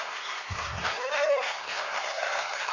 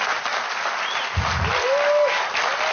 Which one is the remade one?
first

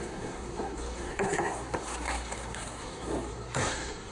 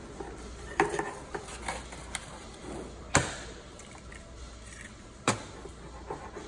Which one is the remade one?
first